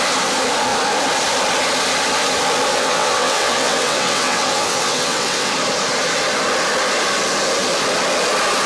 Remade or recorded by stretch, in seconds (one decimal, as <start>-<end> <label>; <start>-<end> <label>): 0.0-2.7 recorded; 2.7-5.5 remade; 5.5-8.7 recorded